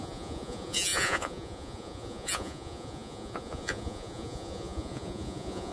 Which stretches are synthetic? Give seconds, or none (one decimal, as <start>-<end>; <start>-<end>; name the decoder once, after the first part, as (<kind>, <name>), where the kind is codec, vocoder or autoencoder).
0.0-5.7 (vocoder, Vocos)